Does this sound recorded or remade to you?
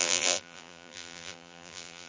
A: remade